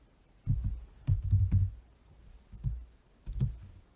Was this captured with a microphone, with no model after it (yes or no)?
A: yes